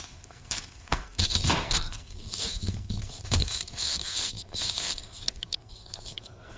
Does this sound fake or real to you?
fake